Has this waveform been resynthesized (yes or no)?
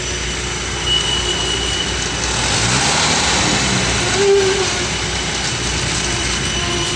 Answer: no